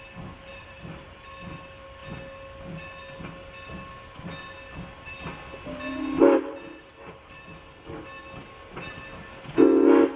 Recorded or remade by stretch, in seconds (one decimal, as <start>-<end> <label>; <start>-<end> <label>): 0.0-0.5 recorded; 0.5-1.3 remade; 1.3-10.2 recorded